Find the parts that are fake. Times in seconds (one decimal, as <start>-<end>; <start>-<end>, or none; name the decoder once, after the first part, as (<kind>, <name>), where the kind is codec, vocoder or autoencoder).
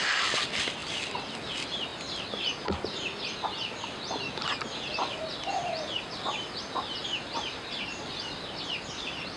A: 7.0-8.1 (vocoder, BigVGAN v2)